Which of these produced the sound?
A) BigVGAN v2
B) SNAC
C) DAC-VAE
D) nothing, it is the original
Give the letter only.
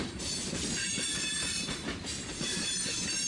A